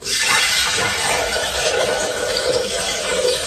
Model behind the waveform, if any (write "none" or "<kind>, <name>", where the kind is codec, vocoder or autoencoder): autoencoder, DAC-VAE